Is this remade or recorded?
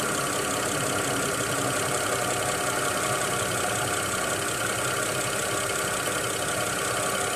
recorded